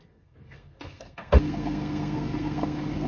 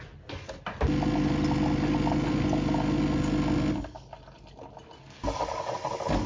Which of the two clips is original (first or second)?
second